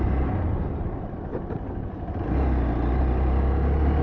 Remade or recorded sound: recorded